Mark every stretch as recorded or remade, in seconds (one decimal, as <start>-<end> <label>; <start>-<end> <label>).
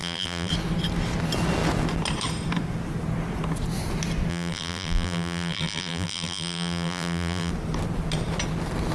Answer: 0.0-0.5 remade; 0.5-4.3 recorded; 4.3-7.5 remade; 7.5-8.9 recorded